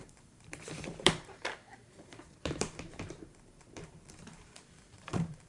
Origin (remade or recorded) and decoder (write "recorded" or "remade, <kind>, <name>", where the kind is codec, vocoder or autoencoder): remade, vocoder, BigVGAN v2